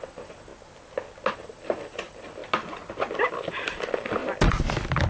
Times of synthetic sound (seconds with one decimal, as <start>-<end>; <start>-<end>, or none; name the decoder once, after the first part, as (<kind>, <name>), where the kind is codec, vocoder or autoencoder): 0.0-0.5 (vocoder, BigVGAN v2); 1.3-2.4; 3.3-4.2